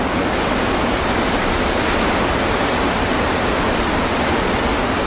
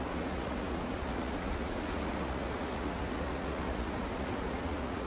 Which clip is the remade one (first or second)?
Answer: second